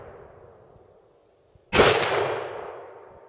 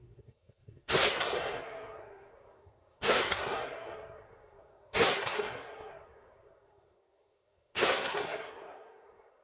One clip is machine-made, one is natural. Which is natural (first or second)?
first